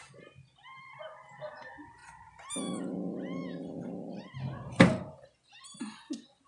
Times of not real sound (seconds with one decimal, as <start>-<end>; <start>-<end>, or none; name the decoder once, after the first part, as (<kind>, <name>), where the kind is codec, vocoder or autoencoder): none